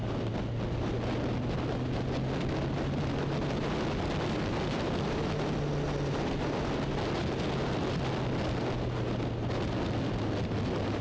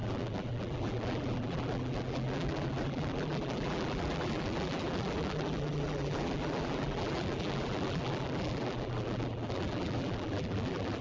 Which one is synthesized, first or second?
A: second